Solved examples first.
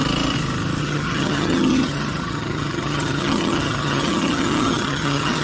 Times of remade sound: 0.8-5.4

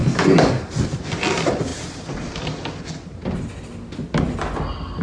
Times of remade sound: 0.0-0.7

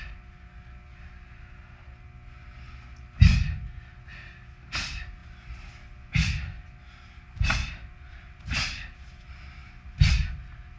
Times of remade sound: none

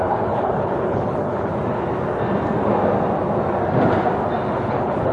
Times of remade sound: 0.0-1.5; 4.6-5.1

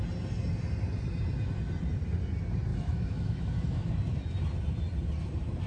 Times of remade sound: 2.7-3.9

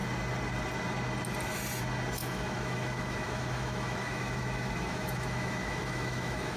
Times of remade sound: 2.2-6.6

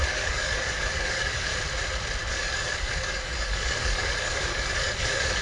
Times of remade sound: 0.0-1.5; 2.3-5.4